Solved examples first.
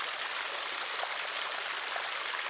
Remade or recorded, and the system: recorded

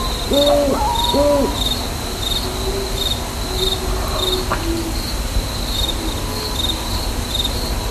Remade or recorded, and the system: recorded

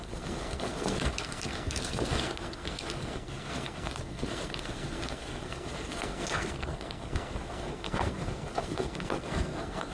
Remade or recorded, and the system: remade, codec, SNAC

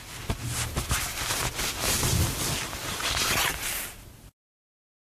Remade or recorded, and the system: recorded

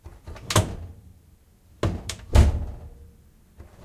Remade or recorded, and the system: recorded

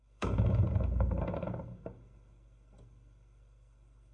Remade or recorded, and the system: remade, codec, SNAC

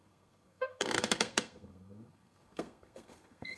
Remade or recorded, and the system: remade, codec, SNAC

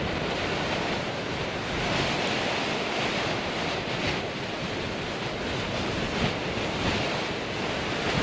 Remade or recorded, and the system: recorded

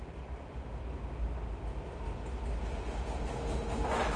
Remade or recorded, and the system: recorded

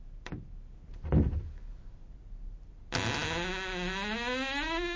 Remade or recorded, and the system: recorded